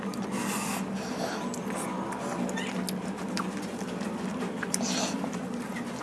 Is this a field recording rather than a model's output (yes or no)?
yes